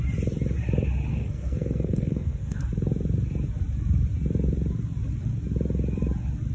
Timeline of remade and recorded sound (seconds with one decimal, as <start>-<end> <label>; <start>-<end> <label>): 0.0-1.1 recorded; 1.1-2.6 remade; 2.6-6.5 recorded